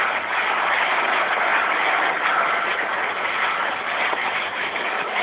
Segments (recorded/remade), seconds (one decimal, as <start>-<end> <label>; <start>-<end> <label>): 0.0-4.2 recorded; 4.2-5.2 remade